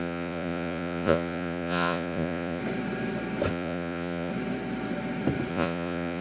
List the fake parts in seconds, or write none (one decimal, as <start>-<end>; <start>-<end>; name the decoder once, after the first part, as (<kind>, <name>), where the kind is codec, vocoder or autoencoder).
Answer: 0.0-2.6 (vocoder, Vocos); 3.5-4.3; 5.5-6.2